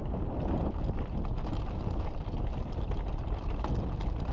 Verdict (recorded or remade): recorded